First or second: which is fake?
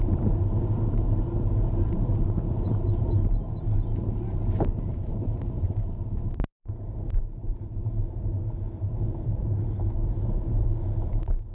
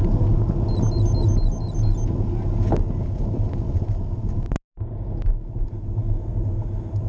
first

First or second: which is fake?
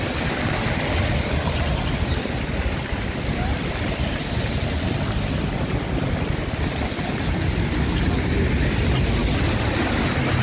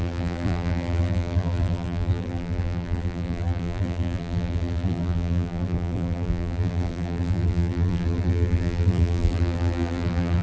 second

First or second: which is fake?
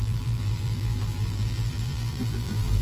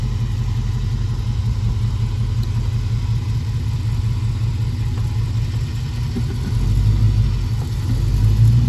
first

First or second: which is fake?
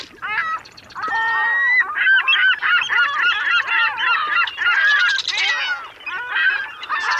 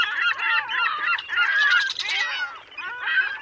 second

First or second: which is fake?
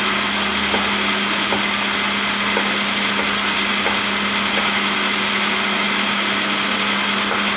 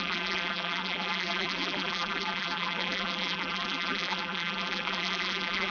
second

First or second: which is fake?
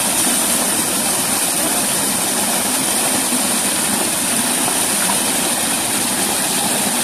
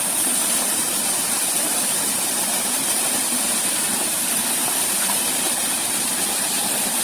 second